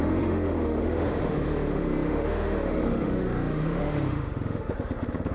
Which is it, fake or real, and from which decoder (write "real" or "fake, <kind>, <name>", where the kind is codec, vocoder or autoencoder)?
fake, autoencoder, DAC-VAE